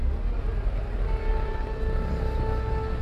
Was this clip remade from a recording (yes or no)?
no